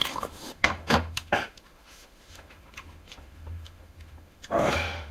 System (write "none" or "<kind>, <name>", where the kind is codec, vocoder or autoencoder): autoencoder, DAC-VAE